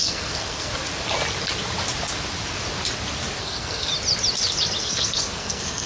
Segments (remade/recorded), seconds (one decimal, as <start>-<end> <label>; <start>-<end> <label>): 0.0-0.7 remade; 0.7-3.4 recorded; 3.4-3.9 remade; 3.9-4.8 recorded; 4.8-5.9 remade